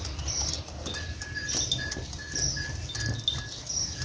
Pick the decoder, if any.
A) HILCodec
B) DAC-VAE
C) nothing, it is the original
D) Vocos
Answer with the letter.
C